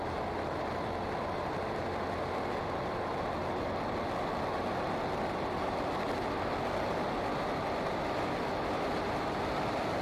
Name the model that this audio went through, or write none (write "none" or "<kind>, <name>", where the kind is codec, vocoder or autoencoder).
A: none